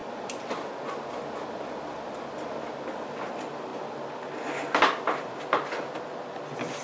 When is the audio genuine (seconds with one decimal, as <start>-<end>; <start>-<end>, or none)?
0.0-6.8